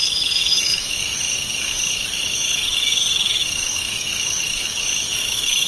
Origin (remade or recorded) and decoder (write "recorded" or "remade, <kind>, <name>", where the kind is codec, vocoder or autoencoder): remade, autoencoder, DAC-VAE